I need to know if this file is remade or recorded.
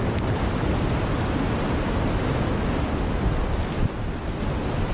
recorded